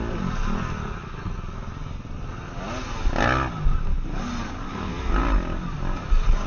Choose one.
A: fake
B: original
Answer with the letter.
B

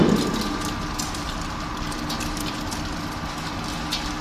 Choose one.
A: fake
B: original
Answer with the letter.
B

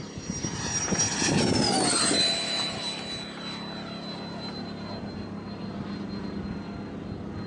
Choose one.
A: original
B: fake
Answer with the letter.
A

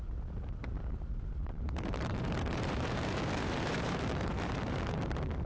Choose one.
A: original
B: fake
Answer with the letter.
B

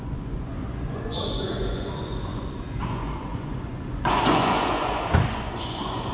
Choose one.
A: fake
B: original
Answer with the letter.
A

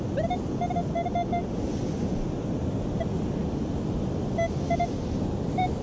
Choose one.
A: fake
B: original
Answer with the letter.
B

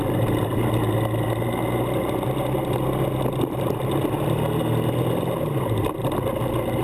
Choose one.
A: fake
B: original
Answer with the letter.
B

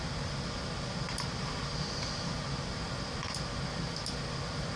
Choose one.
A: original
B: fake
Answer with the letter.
A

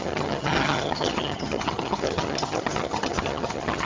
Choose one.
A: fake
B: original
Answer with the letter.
A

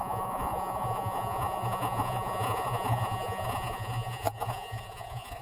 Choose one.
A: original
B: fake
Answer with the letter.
B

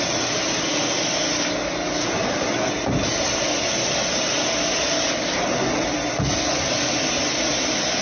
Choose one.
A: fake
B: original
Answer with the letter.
B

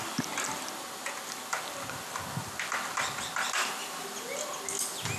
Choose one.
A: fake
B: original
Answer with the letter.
B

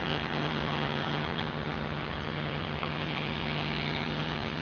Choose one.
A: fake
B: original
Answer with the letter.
A